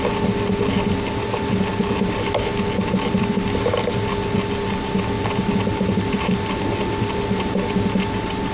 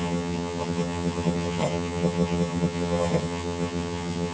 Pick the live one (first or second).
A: first